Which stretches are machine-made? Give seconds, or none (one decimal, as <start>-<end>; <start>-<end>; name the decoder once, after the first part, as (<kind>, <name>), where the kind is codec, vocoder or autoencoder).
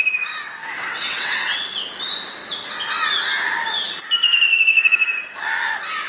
0.6-1.8 (vocoder, WaveNeXt)